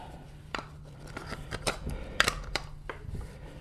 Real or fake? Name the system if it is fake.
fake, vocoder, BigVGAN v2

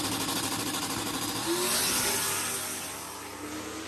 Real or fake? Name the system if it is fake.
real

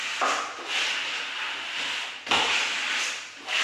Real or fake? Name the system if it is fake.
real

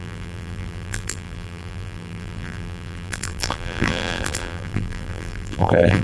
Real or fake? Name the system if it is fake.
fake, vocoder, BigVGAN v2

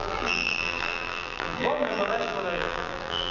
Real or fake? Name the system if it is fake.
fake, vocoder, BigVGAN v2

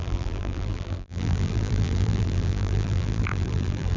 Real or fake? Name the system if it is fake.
fake, vocoder, BigVGAN v2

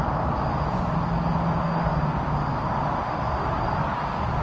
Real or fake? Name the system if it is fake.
real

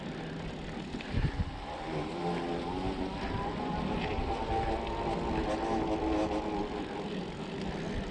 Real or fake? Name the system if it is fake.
real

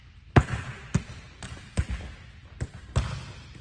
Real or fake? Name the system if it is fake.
real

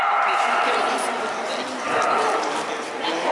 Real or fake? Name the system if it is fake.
real